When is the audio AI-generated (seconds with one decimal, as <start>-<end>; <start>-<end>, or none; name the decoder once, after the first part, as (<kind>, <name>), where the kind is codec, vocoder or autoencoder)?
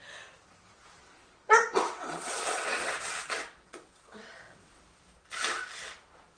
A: 1.0-4.8 (vocoder, WaveNeXt)